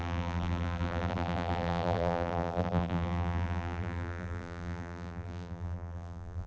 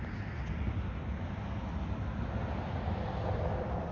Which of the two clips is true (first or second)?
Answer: second